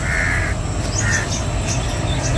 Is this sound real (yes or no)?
yes